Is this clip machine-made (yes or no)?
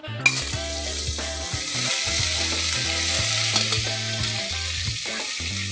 no